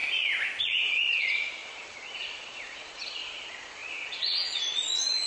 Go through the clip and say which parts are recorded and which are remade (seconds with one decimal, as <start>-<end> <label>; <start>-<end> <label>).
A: 0.0-0.6 recorded; 0.6-5.3 remade